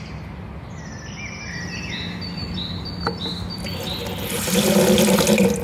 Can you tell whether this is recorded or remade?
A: recorded